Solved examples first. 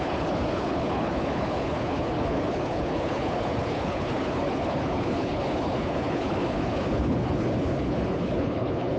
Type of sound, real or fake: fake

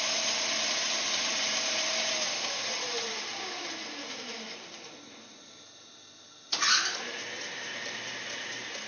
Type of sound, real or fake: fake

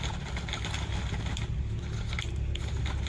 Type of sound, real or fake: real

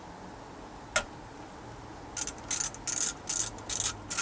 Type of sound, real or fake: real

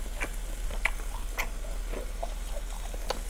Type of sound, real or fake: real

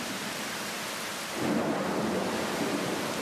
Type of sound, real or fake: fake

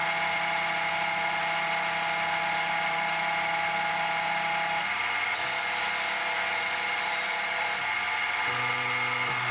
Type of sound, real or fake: real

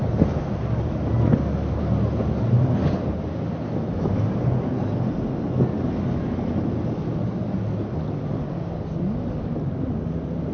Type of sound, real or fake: real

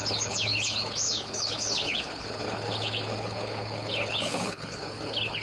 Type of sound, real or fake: fake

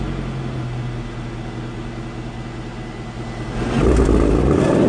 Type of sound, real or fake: real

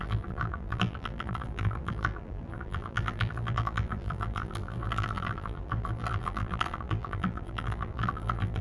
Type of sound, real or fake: fake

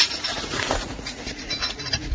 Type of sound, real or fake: fake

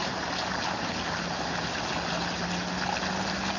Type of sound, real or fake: real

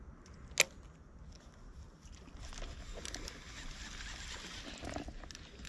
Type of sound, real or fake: real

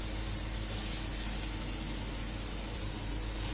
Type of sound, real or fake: real